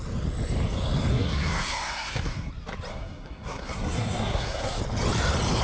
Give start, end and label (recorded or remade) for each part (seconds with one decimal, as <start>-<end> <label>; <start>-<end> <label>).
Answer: 0.0-1.1 recorded; 1.1-2.5 remade; 2.5-2.9 recorded; 2.9-4.8 remade; 4.8-5.6 recorded